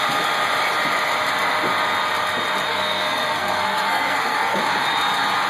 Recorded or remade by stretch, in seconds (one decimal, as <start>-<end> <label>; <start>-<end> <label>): 0.0-2.7 recorded; 2.7-4.6 remade; 4.6-5.5 recorded